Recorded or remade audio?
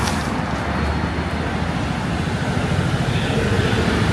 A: recorded